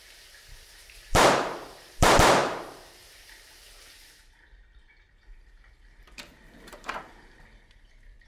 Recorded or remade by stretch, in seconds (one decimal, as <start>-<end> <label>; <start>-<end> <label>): 0.0-8.3 remade